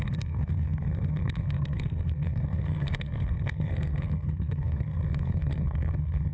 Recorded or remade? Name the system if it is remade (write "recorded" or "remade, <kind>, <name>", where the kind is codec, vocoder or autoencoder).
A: remade, codec, SNAC